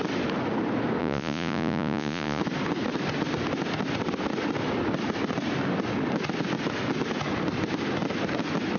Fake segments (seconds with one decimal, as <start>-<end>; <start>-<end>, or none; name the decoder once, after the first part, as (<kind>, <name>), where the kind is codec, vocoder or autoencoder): 1.0-2.4 (vocoder, Vocos)